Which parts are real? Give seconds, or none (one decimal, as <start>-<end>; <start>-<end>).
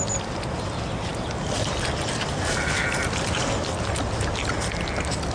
0.0-5.3